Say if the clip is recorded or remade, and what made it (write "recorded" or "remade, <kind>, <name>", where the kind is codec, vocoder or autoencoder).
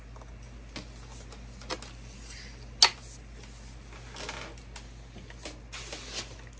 recorded